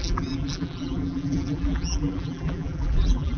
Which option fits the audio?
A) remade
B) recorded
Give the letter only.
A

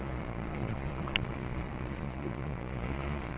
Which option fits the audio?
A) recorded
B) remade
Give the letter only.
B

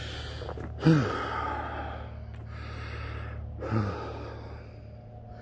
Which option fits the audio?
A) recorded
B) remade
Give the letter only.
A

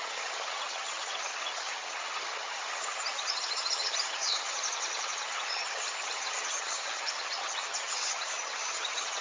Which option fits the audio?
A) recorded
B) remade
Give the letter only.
B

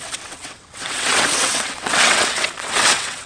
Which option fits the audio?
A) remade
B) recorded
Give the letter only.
A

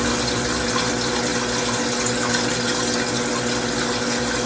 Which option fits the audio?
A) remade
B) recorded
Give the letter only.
B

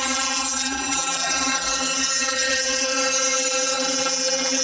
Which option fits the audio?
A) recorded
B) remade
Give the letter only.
B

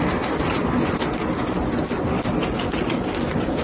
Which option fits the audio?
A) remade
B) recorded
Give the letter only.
B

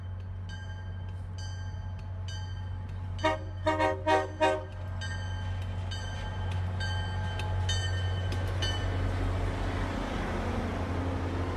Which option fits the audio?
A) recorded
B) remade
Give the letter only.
A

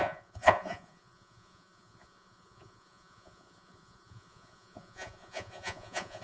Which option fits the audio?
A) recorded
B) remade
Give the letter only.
B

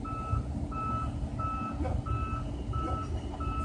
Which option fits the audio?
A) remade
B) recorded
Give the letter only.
B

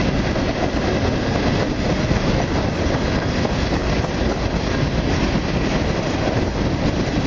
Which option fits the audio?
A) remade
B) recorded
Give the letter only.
B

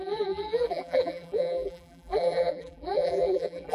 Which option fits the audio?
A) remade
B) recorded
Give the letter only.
A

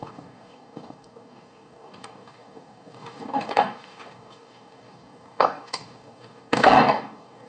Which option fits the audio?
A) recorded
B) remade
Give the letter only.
B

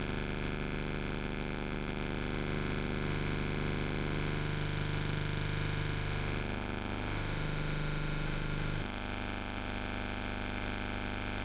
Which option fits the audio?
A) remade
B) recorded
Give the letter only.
A